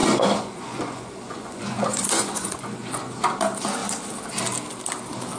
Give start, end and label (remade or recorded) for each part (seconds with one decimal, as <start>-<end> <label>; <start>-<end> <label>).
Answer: 0.0-3.2 remade; 3.2-5.4 recorded